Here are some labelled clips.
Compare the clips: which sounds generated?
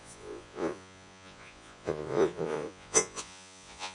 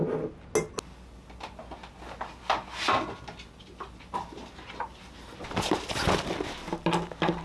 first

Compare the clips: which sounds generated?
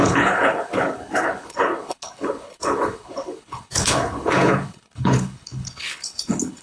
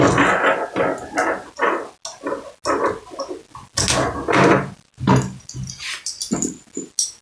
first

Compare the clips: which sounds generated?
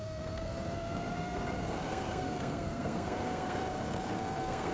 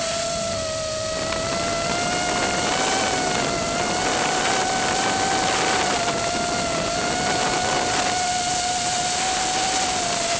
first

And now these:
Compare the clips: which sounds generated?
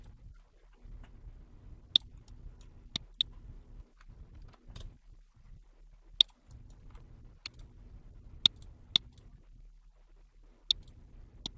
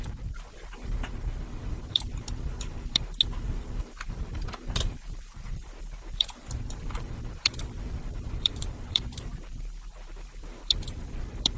second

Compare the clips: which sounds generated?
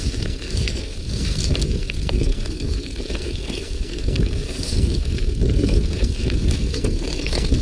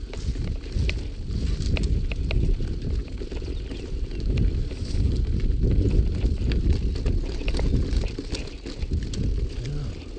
first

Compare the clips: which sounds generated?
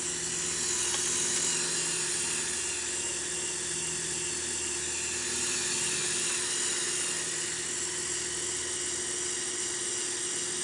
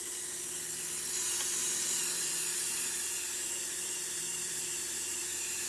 second